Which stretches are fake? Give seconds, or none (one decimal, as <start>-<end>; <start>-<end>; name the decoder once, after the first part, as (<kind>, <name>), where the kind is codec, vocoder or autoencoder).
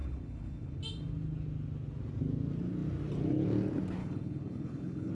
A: 0.0-0.8 (codec, HILCodec); 4.0-5.1